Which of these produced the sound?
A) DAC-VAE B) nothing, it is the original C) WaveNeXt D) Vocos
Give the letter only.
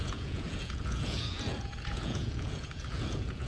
D